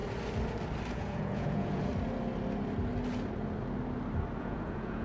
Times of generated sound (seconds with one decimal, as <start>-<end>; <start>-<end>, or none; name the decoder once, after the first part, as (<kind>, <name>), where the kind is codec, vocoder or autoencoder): 0.9-1.9 (vocoder, Vocos); 4.4-5.0